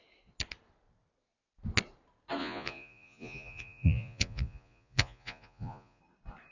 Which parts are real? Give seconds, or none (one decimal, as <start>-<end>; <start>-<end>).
0.0-2.4; 6.0-6.5